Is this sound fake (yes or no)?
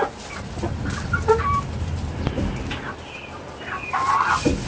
no